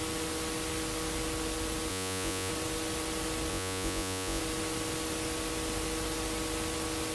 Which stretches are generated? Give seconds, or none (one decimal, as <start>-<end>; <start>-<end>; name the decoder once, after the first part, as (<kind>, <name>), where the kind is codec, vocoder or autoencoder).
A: 1.9-2.5 (vocoder, Vocos); 3.5-4.4